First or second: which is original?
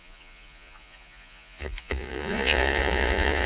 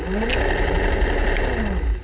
second